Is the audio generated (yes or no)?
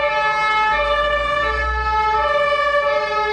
no